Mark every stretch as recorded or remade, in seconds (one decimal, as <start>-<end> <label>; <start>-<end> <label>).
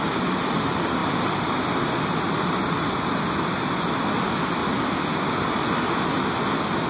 0.0-6.9 recorded